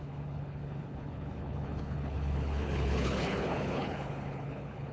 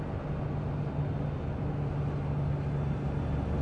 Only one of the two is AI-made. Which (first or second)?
first